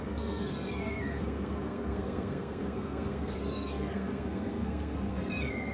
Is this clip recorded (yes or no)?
no